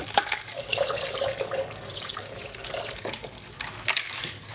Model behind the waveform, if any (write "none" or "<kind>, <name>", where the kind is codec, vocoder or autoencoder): codec, DAC